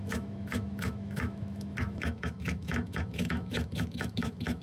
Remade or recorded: remade